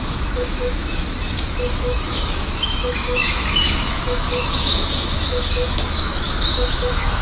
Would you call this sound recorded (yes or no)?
no